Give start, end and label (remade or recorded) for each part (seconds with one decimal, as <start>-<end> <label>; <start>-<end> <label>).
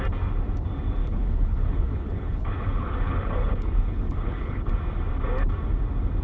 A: 0.0-1.0 recorded; 1.0-4.7 remade; 4.7-6.2 recorded